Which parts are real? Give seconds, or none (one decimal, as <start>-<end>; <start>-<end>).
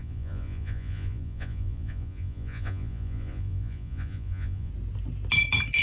4.7-5.8